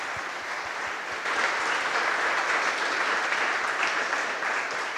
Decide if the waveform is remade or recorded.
remade